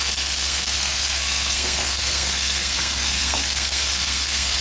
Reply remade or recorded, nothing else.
remade